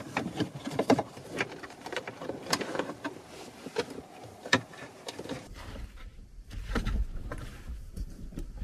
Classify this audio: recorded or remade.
remade